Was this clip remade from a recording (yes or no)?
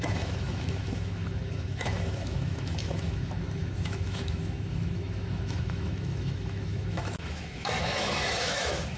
yes